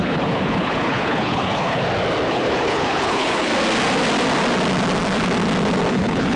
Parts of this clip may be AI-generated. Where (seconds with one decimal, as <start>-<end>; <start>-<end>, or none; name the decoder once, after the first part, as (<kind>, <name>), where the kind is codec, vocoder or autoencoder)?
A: 0.0-1.8 (codec, HILCodec); 2.3-3.5; 5.9-6.4